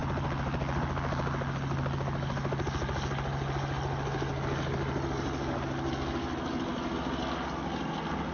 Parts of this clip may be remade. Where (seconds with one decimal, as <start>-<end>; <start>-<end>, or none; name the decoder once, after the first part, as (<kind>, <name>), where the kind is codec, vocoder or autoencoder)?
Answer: none